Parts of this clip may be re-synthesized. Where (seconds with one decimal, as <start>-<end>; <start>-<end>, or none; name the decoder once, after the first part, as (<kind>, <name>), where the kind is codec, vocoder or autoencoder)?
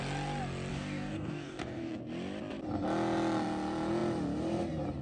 0.7-1.9 (codec, DAC)